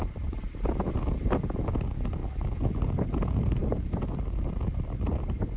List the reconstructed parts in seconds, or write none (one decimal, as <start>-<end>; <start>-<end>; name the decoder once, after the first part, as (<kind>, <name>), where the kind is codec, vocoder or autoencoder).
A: none